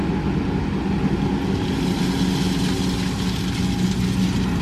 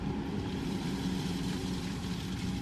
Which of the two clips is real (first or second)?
first